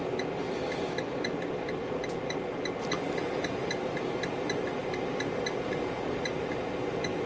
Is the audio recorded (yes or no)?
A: yes